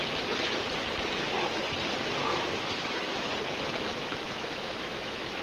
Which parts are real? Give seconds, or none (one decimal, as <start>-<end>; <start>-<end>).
0.0-2.3; 3.3-3.9